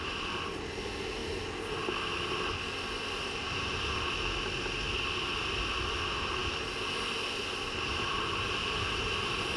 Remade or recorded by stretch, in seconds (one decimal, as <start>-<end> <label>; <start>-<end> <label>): 0.0-9.6 recorded